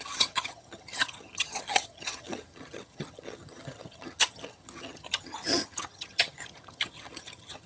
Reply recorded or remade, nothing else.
remade